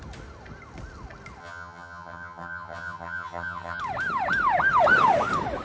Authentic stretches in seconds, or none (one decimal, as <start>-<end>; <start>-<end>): 0.0-1.4; 3.8-5.6